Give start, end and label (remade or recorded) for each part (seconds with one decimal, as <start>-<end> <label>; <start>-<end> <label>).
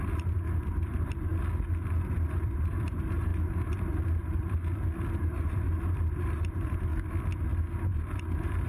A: 0.0-1.3 remade; 1.3-2.3 recorded; 2.3-3.3 remade; 3.3-5.1 recorded; 5.1-6.9 remade; 6.9-7.8 recorded; 7.8-8.7 remade